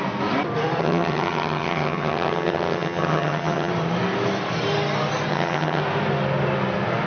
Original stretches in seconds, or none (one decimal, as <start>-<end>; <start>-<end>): 0.0-0.8; 3.7-5.3; 5.8-7.1